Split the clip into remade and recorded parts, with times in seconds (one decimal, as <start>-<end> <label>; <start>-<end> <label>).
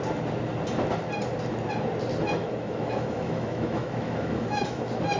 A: 0.0-2.4 recorded; 2.4-4.8 remade; 4.8-5.2 recorded